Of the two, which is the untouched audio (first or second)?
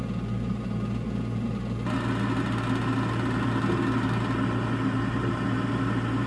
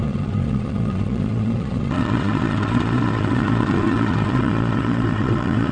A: first